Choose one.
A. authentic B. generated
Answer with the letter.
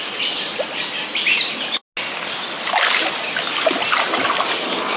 A